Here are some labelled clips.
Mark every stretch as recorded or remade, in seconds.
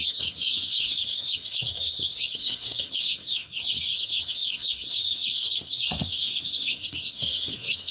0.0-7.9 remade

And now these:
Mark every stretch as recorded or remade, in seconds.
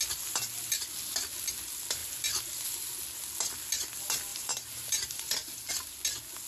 0.0-4.3 recorded; 4.3-5.7 remade; 5.7-6.5 recorded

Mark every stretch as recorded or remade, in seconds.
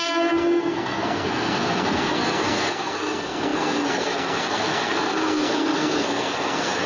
0.0-6.9 remade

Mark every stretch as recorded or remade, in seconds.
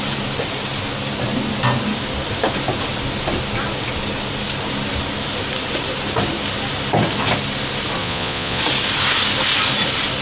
0.0-8.0 recorded; 8.0-8.6 remade; 8.6-10.2 recorded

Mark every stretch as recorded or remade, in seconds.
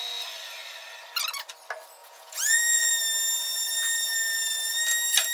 0.0-2.0 recorded; 2.0-2.9 remade; 2.9-5.3 recorded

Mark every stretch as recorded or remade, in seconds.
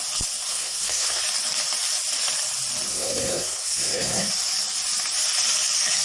0.0-0.5 recorded; 0.5-1.2 remade; 1.2-2.9 recorded; 2.9-4.3 remade; 4.3-6.0 recorded